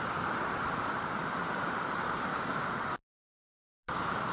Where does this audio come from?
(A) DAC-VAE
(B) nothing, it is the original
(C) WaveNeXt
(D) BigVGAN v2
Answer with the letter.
D